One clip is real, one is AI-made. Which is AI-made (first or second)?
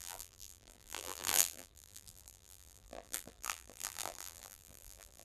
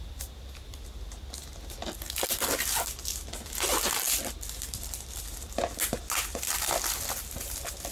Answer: first